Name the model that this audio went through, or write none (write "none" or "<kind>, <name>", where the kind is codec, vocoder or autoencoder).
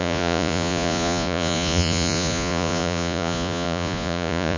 vocoder, Vocos